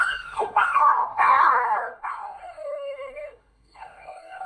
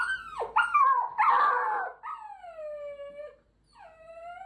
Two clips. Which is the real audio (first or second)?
second